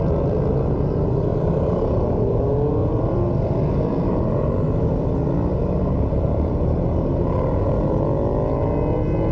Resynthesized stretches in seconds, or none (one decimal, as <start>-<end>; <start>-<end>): 1.3-2.2; 2.8-6.5